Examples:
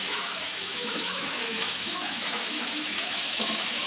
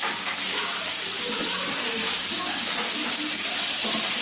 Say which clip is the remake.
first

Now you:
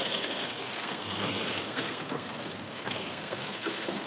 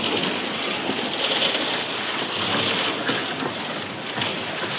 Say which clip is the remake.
first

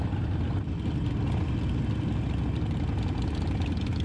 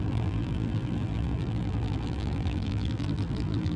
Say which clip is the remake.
second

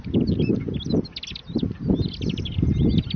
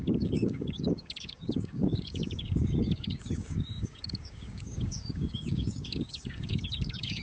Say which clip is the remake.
second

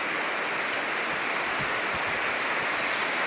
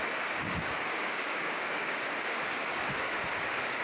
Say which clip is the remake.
second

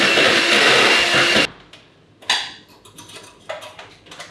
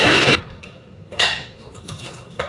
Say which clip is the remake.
second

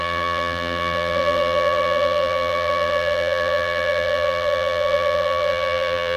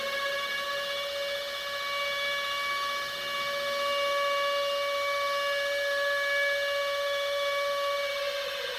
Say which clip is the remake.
first